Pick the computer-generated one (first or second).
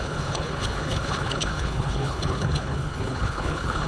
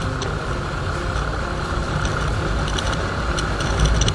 first